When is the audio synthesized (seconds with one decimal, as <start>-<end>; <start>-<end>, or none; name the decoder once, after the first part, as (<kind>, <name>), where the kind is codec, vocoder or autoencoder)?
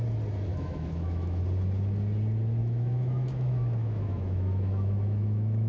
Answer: 0.5-1.4 (autoencoder, DAC-VAE); 2.6-5.7